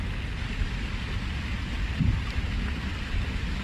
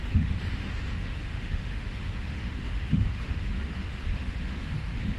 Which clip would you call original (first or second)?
first